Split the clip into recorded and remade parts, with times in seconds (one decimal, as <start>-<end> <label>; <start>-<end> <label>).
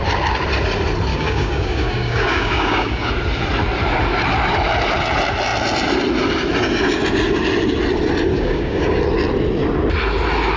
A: 0.0-1.1 recorded; 1.1-3.1 remade; 3.1-8.3 recorded; 8.3-9.0 remade; 9.0-10.6 recorded